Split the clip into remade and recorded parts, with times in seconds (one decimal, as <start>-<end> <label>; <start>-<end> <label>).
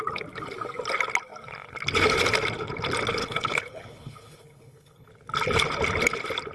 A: 0.0-3.2 recorded; 3.2-5.1 remade; 5.1-6.5 recorded